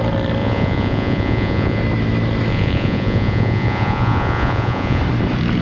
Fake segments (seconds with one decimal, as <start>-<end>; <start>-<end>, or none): 0.4-1.8; 2.5-5.0